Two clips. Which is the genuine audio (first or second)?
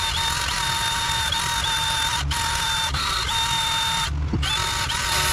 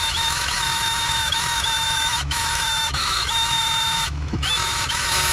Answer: first